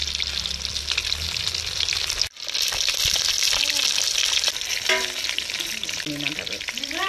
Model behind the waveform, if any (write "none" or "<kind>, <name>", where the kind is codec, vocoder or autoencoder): none